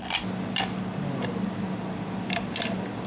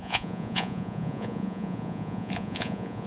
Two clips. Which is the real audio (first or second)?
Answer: first